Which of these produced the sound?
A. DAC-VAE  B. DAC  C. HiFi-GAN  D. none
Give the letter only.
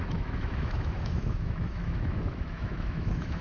A